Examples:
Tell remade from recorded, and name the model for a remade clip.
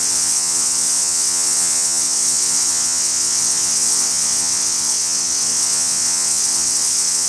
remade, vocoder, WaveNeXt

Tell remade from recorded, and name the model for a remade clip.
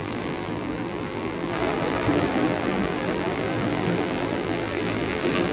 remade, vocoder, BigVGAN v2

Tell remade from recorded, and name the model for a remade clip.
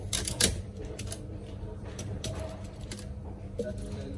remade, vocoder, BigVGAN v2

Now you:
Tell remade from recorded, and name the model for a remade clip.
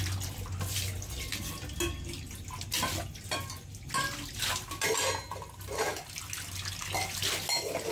recorded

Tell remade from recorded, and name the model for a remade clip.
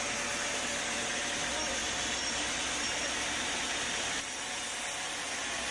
recorded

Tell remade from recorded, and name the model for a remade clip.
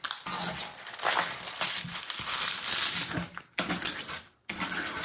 recorded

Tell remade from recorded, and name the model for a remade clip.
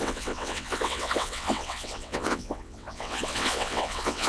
remade, vocoder, WaveNeXt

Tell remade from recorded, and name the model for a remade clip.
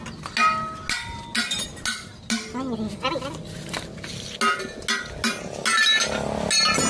recorded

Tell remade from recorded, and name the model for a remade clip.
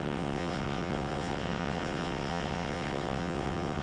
remade, vocoder, WaveNeXt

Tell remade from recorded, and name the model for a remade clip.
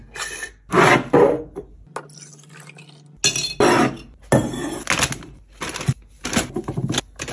recorded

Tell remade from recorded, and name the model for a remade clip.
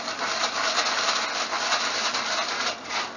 recorded